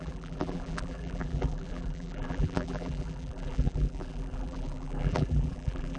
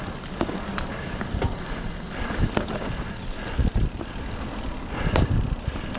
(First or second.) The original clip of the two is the second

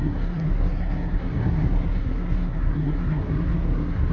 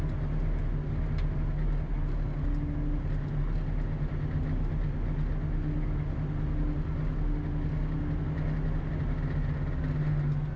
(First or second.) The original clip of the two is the second